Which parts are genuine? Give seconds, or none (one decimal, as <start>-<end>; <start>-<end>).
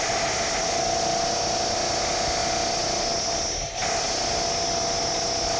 0.0-5.6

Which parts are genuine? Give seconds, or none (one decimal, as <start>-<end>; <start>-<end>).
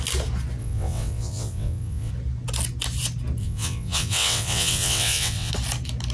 0.0-0.6; 2.1-3.4; 5.5-6.1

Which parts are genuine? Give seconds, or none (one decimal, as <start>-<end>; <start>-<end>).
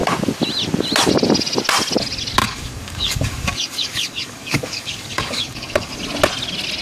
0.0-2.4; 5.9-6.8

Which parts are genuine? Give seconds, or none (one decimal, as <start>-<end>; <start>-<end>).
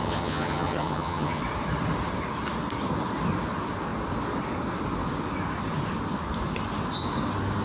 1.4-7.6